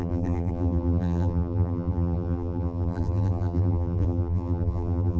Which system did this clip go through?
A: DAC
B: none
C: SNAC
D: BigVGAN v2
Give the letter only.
D